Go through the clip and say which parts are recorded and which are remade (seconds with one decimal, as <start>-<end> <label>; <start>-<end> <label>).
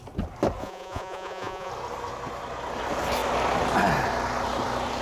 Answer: 0.0-0.6 recorded; 0.6-1.7 remade; 1.7-5.0 recorded